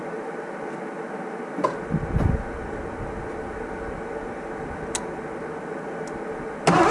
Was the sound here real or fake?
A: real